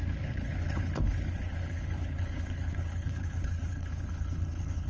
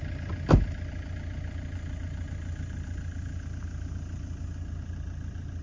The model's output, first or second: first